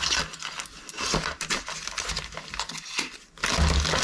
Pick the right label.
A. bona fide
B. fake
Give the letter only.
A